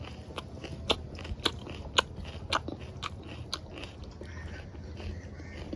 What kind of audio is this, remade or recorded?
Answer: recorded